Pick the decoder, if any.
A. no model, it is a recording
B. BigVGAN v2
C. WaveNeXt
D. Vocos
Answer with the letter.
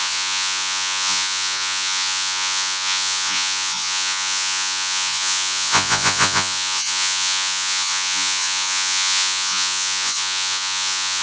D